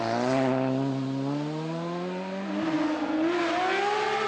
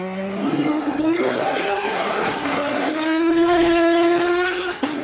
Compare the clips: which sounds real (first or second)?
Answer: first